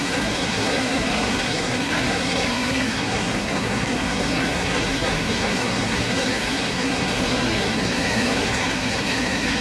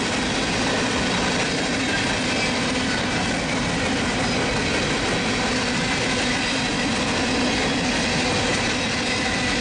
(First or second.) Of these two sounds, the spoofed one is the first